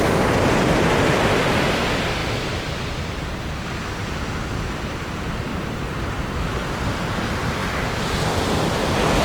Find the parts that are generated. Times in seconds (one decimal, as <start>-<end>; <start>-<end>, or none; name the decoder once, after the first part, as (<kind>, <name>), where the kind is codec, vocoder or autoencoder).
5.5-6.4 (vocoder, BigVGAN v2)